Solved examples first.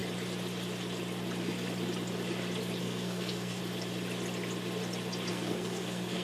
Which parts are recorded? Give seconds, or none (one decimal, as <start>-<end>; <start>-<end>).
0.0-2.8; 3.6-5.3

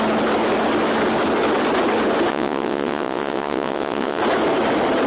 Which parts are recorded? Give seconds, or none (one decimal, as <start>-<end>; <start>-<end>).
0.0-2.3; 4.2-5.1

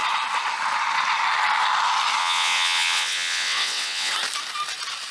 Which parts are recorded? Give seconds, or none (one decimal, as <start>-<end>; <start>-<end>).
0.0-2.2; 4.1-5.1

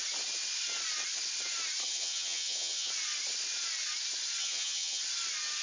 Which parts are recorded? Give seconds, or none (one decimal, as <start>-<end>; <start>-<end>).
0.0-1.8; 2.9-4.4; 5.0-5.6